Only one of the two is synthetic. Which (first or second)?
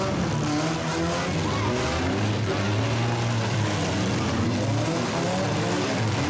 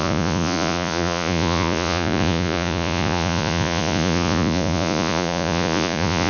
second